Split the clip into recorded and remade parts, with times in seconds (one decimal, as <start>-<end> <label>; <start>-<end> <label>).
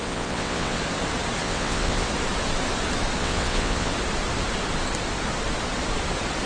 0.0-0.8 remade; 0.8-1.4 recorded; 1.4-2.1 remade; 2.1-3.2 recorded; 3.2-3.9 remade; 3.9-6.5 recorded